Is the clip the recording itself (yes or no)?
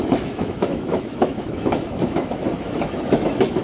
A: no